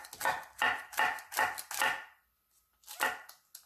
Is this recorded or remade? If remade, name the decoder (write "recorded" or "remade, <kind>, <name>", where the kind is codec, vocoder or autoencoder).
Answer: recorded